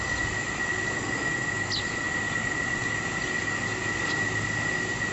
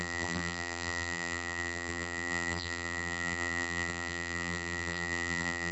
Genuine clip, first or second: first